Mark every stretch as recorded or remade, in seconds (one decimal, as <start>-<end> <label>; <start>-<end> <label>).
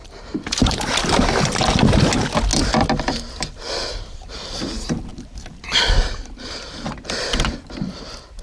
0.0-0.8 remade; 0.8-8.4 recorded